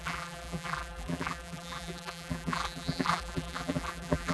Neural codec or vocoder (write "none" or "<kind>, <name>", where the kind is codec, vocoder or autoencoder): vocoder, BigVGAN v2